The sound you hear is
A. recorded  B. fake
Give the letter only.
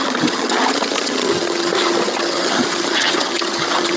B